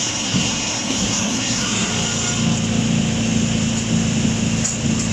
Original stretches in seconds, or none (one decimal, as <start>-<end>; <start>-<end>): 1.9-5.1